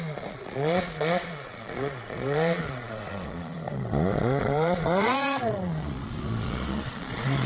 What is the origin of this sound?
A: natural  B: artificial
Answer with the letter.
B